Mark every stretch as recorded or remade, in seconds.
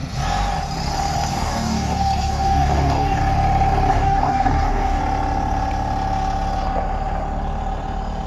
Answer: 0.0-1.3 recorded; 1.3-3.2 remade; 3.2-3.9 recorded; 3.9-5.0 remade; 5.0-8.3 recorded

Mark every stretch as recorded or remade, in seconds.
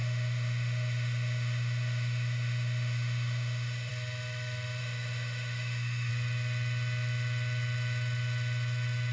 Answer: 0.0-3.9 remade; 3.9-4.8 recorded; 4.8-6.1 remade; 6.1-9.1 recorded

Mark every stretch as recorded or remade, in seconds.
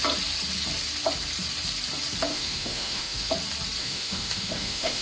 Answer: 0.0-2.3 recorded; 2.3-3.3 remade; 3.3-3.8 recorded; 3.8-5.0 remade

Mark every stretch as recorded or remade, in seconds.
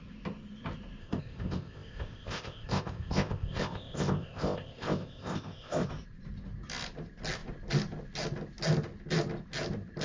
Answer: 0.0-1.0 recorded; 1.0-5.9 remade; 5.9-10.0 recorded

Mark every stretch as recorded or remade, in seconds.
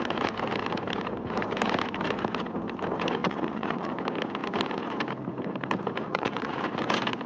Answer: 0.0-3.2 recorded; 3.2-3.9 remade; 3.9-6.0 recorded; 6.0-6.6 remade; 6.6-7.3 recorded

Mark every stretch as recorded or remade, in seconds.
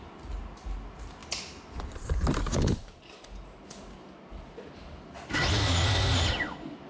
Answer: 0.0-6.9 recorded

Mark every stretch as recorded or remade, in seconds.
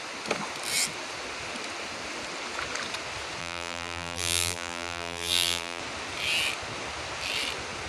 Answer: 0.0-3.4 recorded; 3.4-5.8 remade; 5.8-7.9 recorded